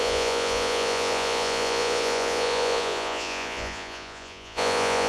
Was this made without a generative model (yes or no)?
no